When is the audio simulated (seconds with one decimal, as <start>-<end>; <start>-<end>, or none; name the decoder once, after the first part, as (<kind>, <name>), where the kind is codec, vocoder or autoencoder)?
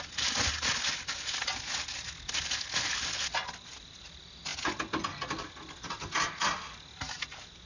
none